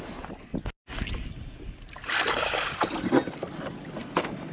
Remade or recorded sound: recorded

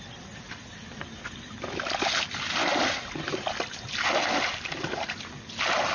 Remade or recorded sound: recorded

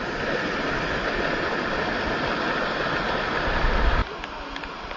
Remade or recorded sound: recorded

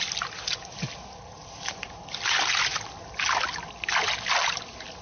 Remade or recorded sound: recorded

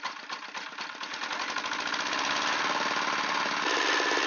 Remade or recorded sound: recorded